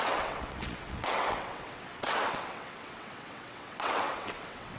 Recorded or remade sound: remade